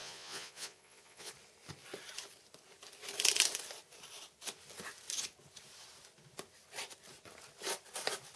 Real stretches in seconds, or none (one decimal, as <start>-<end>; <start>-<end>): 1.3-8.4